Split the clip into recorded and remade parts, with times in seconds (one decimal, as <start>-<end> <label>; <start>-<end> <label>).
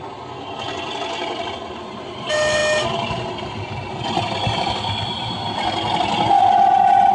0.0-7.1 recorded